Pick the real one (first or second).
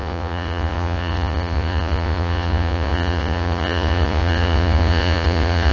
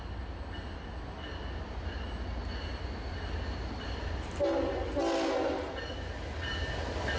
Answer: second